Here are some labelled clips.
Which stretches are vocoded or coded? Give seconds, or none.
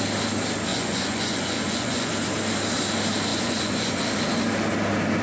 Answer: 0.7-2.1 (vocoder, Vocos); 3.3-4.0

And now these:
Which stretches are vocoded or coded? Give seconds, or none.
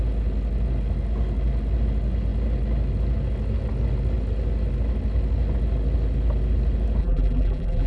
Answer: 7.0-7.9 (vocoder, BigVGAN v2)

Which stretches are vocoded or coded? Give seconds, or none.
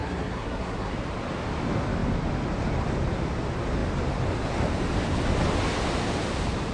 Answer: 0.0-0.9 (codec, SNAC)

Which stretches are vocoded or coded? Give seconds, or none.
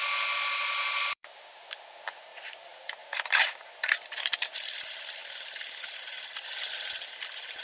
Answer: 0.9-5.2 (vocoder, BigVGAN v2)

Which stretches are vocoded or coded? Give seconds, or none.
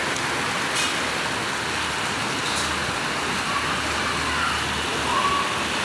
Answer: none